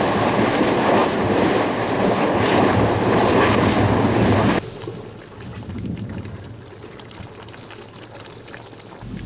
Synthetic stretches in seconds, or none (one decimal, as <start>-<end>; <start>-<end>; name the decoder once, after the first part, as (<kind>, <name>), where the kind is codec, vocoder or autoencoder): 1.0-3.3 (vocoder, BigVGAN v2); 5.5-6.4